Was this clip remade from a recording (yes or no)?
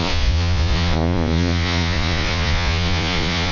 yes